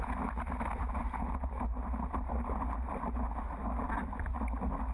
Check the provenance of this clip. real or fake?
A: real